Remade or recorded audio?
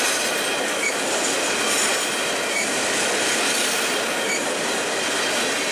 recorded